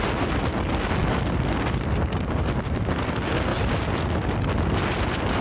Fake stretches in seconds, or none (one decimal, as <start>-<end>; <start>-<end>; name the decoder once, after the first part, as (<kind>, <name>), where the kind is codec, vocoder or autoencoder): none